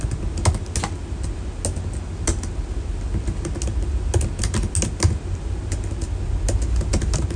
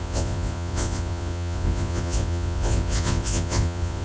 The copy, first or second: second